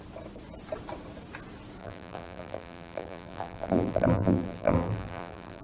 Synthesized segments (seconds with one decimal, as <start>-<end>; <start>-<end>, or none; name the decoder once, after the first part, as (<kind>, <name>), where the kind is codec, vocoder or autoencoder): 1.8-5.6 (vocoder, BigVGAN v2)